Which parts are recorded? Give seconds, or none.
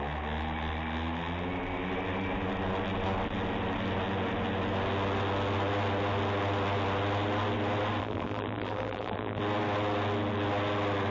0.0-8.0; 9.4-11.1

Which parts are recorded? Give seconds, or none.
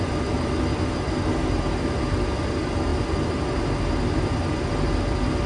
0.0-5.5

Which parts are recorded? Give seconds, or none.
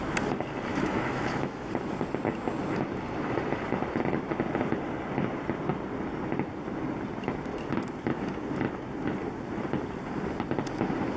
0.0-0.7; 1.7-11.2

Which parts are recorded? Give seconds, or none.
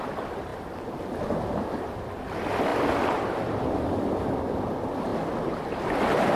0.0-6.4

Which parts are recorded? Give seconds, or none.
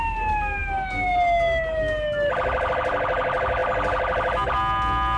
0.0-5.2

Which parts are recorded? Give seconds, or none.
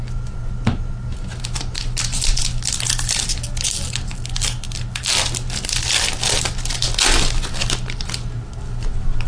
0.0-9.3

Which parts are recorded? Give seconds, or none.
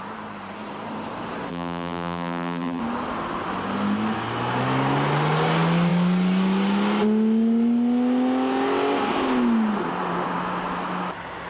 0.0-1.5; 2.8-11.5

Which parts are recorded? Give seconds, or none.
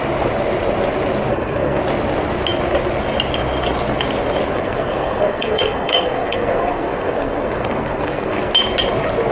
0.0-1.3; 1.8-4.5; 8.5-9.3